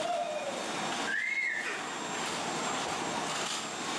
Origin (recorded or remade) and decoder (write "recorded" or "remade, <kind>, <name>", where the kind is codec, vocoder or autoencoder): recorded